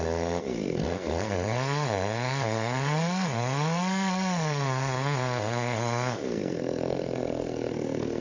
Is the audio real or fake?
fake